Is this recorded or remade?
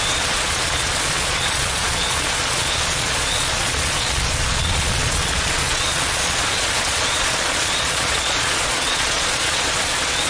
remade